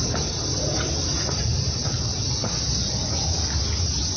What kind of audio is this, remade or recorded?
recorded